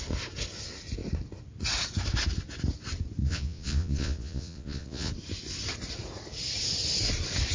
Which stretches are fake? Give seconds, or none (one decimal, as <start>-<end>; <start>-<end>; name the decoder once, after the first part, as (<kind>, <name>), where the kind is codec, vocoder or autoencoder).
3.2-5.1 (vocoder, Vocos)